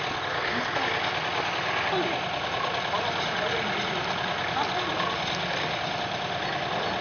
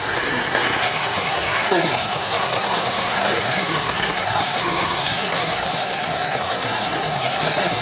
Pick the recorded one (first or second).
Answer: first